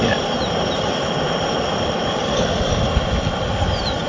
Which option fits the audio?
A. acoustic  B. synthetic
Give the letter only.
A